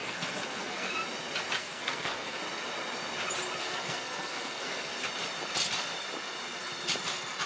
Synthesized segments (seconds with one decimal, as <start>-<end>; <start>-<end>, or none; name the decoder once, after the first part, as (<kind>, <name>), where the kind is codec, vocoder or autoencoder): 0.0-0.9 (codec, SNAC); 1.6-2.4; 3.6-4.9